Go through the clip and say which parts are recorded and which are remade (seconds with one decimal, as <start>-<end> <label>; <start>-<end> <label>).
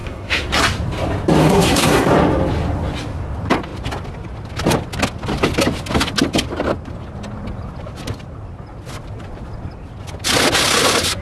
0.0-0.5 remade; 0.5-1.4 recorded; 1.4-2.1 remade; 2.1-11.2 recorded